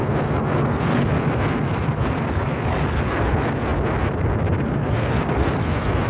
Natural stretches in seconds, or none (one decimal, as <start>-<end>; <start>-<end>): 0.0-6.1